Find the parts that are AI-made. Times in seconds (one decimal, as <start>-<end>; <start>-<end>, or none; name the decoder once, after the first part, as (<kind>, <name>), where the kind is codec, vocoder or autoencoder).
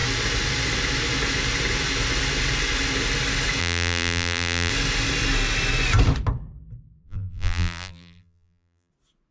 3.6-4.7 (vocoder, BigVGAN v2); 7.0-8.9